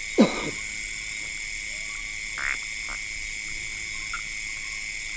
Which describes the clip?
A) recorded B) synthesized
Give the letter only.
A